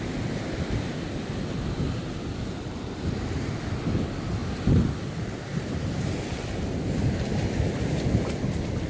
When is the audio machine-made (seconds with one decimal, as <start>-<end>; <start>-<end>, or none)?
none